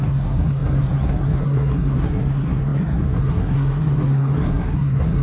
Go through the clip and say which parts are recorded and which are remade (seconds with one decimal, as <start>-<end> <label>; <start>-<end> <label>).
0.0-5.2 remade